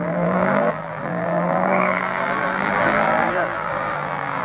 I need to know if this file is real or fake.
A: fake